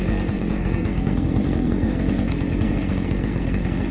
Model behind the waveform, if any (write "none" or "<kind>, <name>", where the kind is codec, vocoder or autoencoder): codec, SNAC